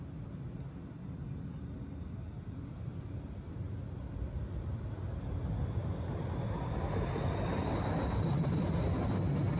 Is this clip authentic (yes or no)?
yes